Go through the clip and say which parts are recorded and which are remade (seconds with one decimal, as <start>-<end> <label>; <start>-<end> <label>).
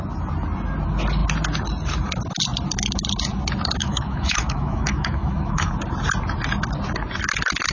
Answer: 0.0-3.8 recorded; 3.8-5.7 remade; 5.7-7.7 recorded